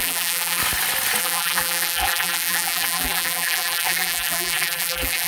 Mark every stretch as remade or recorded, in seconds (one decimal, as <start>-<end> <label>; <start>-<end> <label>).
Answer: 0.0-0.6 remade; 0.6-1.2 recorded; 1.2-5.3 remade